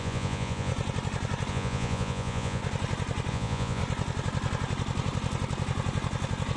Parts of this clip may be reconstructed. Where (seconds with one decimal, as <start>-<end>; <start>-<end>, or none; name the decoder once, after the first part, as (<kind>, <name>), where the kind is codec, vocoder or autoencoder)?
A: 0.0-0.7 (vocoder, Vocos); 1.5-2.6; 3.3-3.8